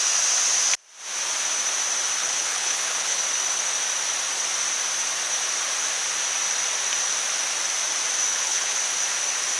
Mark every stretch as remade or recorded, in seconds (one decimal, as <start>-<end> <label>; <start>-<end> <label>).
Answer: 0.0-2.2 recorded; 2.2-3.2 remade; 3.2-8.3 recorded; 8.3-8.8 remade; 8.8-9.6 recorded

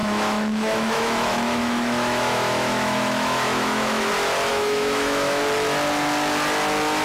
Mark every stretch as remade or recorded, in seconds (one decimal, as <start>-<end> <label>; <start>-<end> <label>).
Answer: 0.0-4.1 remade; 4.1-4.5 recorded; 4.5-5.4 remade; 5.4-7.0 recorded